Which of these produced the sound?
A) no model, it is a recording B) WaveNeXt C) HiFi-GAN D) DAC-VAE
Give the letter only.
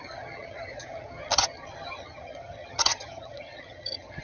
C